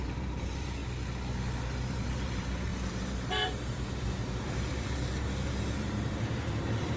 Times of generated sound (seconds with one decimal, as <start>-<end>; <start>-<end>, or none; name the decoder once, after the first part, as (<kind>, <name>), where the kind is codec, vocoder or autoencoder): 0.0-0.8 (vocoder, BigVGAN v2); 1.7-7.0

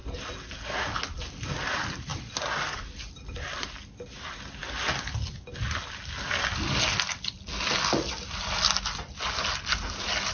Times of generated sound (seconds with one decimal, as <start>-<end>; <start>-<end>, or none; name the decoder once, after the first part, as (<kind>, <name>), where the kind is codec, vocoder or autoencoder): 1.3-2.1 (vocoder, BigVGAN v2); 3.1-4.6; 9.7-10.3

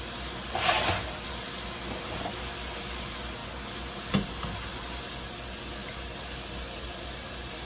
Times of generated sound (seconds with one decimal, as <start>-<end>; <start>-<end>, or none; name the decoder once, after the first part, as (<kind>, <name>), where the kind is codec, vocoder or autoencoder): none